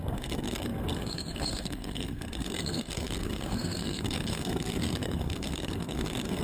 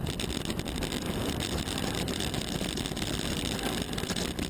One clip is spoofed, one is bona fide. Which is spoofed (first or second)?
first